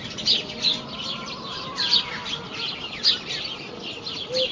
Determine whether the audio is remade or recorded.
recorded